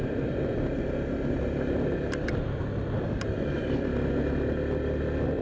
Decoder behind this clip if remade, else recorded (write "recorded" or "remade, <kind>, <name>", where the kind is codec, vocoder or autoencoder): recorded